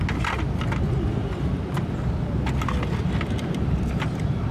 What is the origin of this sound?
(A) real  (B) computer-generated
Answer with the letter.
A